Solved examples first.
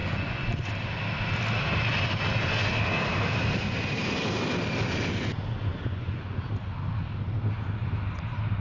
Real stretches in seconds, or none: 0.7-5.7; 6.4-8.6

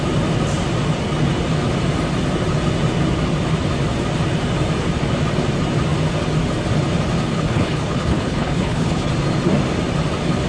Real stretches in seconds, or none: 0.0-7.3; 9.1-10.5

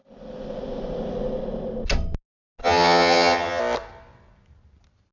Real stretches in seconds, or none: 0.0-2.6; 3.6-5.1

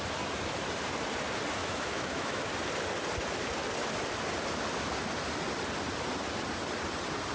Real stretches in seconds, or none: 0.0-1.6; 2.5-7.3

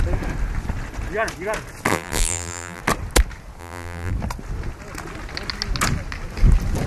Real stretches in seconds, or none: 0.0-1.9; 2.8-3.6; 4.1-6.9

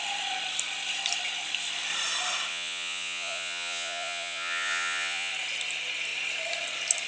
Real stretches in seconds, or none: 0.0-2.5; 5.3-7.1

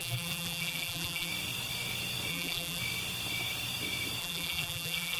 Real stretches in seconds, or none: 1.3-2.3; 2.8-4.2